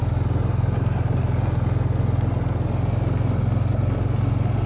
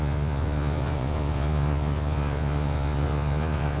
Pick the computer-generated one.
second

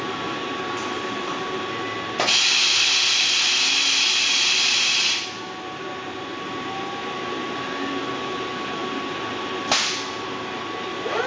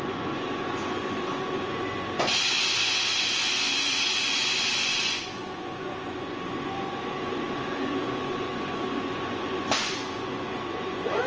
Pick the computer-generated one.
second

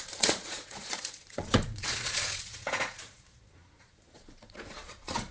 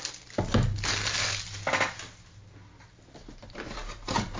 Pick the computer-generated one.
first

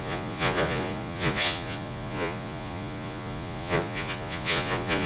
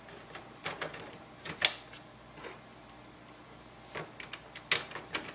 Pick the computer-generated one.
first